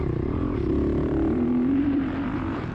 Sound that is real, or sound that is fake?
fake